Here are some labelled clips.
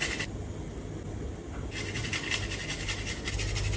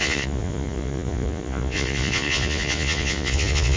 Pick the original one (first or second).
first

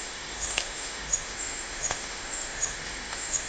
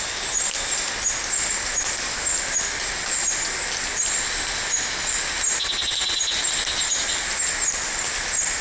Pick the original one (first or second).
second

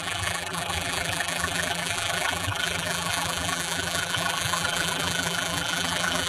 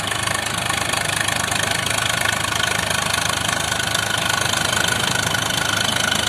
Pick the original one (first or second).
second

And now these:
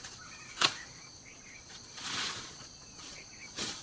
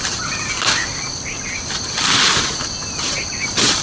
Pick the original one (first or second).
second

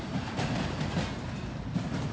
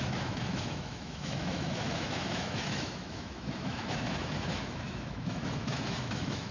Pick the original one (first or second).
first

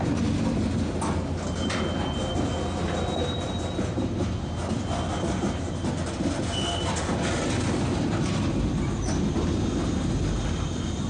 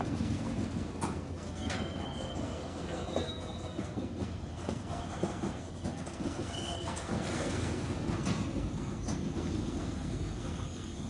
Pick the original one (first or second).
first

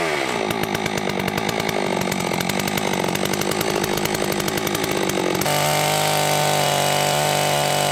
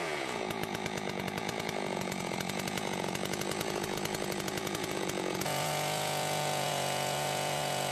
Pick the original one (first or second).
first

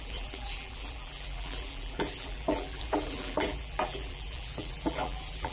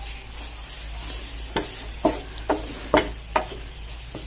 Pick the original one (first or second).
second